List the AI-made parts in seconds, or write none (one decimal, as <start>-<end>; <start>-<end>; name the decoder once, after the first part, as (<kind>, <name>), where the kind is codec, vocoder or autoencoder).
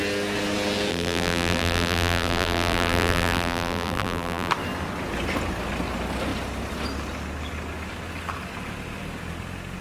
0.9-4.5 (vocoder, BigVGAN v2)